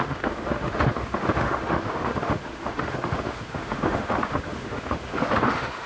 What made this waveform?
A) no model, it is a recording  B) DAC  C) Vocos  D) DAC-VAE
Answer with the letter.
D